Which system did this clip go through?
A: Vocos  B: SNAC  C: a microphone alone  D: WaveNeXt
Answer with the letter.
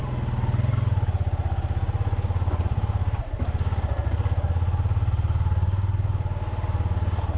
C